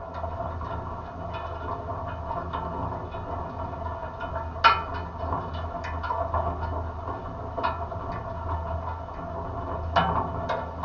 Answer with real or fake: real